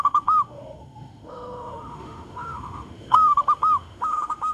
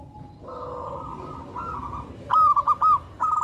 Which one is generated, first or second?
first